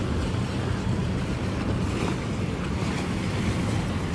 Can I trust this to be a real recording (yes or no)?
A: yes